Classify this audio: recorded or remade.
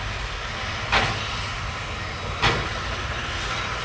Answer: recorded